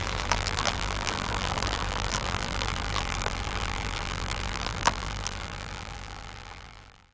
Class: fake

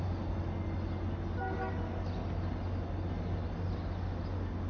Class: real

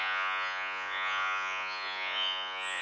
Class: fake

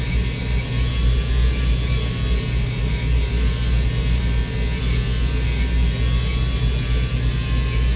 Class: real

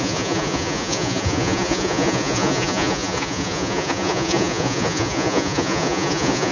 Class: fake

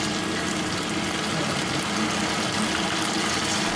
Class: real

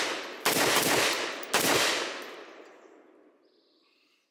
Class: real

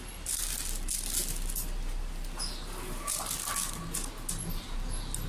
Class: real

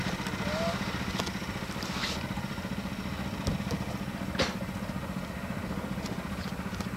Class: real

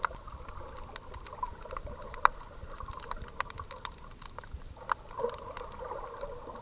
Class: real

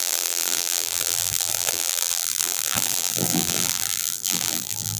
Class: fake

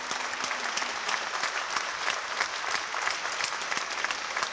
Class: fake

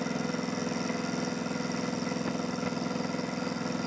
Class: real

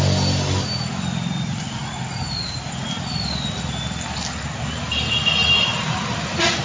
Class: real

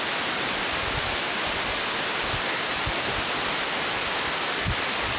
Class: real